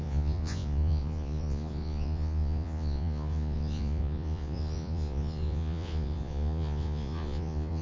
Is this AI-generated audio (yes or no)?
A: yes